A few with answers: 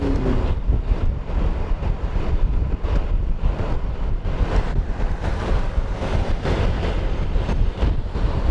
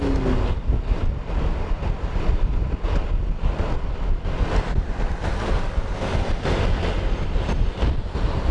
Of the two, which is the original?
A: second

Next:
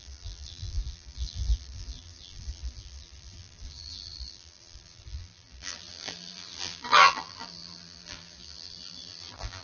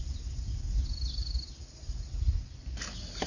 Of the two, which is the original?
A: second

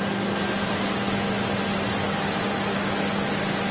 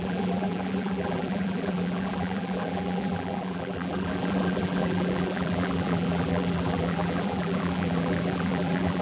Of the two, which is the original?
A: first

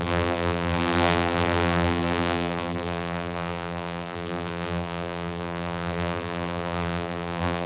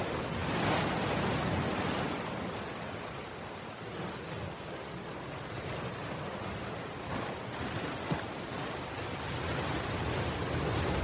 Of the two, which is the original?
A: second